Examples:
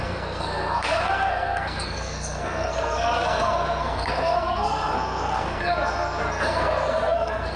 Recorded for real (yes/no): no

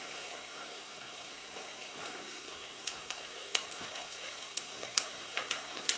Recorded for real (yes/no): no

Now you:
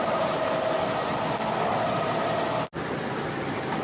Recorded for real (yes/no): yes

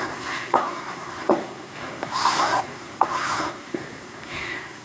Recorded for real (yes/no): no